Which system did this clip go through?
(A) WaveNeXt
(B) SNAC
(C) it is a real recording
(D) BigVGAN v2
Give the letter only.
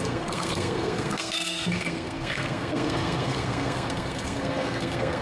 B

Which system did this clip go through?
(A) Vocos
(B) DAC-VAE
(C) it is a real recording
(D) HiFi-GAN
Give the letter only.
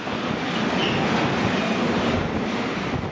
C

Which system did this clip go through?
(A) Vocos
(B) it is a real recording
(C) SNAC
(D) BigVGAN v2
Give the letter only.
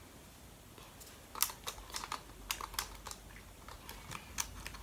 B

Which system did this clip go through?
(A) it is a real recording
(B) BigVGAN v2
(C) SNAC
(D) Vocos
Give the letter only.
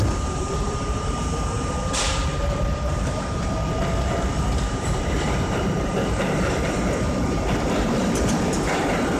B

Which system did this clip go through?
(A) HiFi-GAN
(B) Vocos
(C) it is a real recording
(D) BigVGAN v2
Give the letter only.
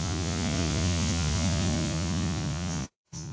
B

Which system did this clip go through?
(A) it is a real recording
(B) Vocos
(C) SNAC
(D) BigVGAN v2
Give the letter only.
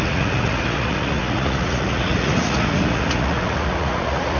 B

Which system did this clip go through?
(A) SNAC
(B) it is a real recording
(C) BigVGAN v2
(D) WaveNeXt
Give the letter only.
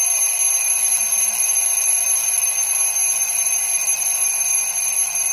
B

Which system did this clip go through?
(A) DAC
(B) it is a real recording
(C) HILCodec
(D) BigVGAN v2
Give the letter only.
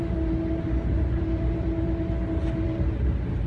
B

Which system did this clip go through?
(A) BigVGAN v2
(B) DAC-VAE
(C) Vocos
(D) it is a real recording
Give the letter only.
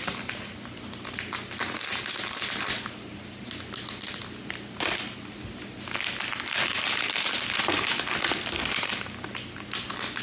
D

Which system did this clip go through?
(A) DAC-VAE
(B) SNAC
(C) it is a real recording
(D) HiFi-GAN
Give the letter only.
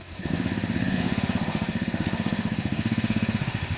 A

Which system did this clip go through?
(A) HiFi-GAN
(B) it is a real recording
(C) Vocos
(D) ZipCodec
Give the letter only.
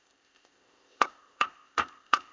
D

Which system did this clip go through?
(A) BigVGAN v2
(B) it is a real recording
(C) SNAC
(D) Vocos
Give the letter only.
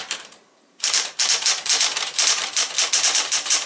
A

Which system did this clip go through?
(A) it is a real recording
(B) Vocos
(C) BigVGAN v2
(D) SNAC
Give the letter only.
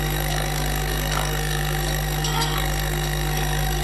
D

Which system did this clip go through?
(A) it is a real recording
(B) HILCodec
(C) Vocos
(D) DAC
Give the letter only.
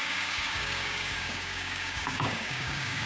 D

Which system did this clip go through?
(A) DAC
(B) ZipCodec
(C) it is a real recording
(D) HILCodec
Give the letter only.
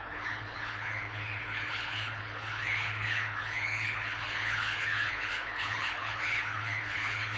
D